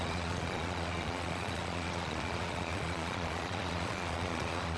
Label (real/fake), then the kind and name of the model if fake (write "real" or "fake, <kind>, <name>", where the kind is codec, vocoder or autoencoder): fake, vocoder, Vocos